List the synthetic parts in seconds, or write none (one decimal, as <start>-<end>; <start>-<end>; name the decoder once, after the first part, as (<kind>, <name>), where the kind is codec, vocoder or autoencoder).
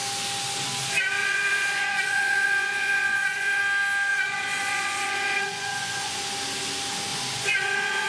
1.2-3.6 (vocoder, Vocos); 4.1-6.2; 7.1-8.1